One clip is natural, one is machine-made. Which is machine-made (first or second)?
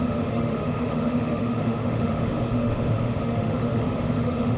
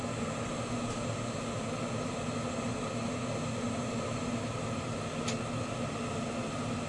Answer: first